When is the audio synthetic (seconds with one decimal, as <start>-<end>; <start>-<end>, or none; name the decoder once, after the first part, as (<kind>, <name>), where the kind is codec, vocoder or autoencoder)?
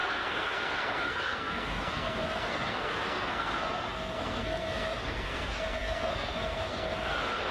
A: 0.0-7.5 (codec, SNAC)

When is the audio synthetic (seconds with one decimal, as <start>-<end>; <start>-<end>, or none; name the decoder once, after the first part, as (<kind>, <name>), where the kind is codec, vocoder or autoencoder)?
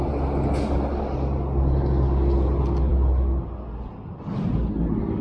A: none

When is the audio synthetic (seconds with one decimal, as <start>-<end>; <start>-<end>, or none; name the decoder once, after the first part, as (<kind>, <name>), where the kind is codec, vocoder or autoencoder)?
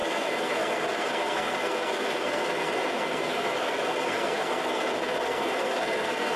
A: 0.0-6.4 (codec, SNAC)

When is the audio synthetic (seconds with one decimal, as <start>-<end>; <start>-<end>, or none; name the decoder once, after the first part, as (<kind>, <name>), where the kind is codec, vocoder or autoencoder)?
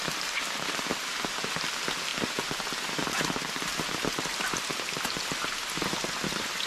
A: none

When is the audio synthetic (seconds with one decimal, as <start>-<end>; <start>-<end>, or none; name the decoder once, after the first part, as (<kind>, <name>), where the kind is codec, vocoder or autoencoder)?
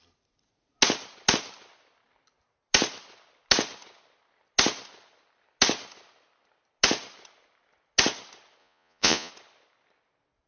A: 8.6-9.3 (vocoder, Vocos)